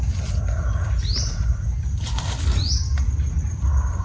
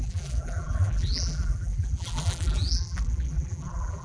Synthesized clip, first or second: second